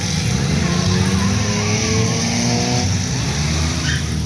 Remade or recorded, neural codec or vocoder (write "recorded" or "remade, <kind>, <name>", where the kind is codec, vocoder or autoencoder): recorded